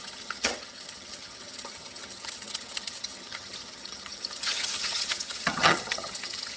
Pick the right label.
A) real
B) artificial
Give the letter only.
B